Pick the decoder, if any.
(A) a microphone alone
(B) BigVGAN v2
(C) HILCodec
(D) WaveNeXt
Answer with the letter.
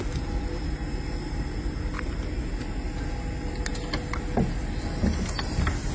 A